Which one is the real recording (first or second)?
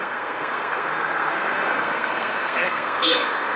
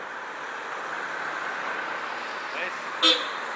second